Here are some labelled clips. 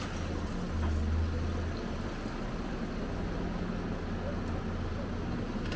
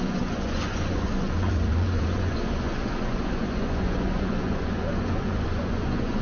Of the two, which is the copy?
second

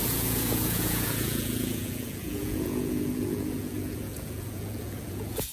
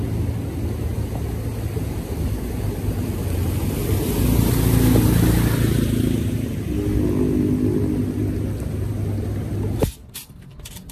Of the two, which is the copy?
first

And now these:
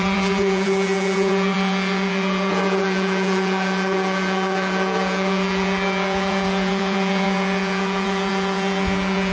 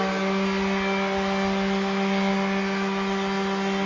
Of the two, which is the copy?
first